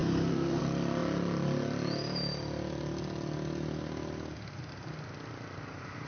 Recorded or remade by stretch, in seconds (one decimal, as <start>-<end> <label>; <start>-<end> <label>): 0.0-0.6 remade; 0.6-6.1 recorded